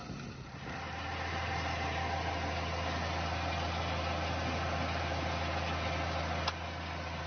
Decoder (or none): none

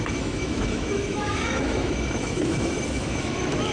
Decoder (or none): autoencoder, DAC-VAE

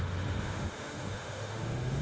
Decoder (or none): autoencoder, DAC-VAE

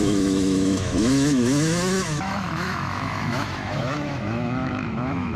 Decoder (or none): autoencoder, DAC-VAE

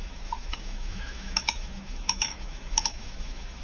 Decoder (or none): autoencoder, DAC-VAE